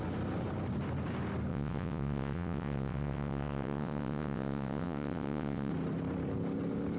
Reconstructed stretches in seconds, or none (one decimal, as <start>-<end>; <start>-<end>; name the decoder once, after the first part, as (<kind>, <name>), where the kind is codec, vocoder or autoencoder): 1.5-5.7 (vocoder, WaveNeXt)